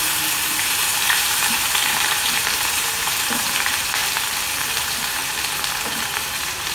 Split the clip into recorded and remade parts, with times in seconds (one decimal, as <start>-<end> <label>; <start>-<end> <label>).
0.0-4.0 remade; 4.0-4.8 recorded; 4.8-5.2 remade; 5.2-5.8 recorded; 5.8-6.7 remade